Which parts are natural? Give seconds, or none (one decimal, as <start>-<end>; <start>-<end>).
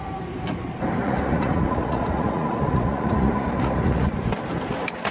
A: 0.0-1.0; 4.1-5.1